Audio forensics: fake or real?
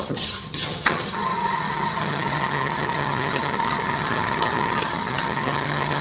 fake